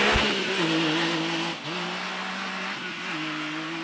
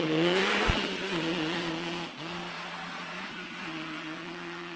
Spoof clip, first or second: second